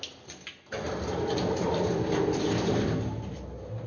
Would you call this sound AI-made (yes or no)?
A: no